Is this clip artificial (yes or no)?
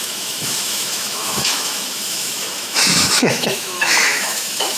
yes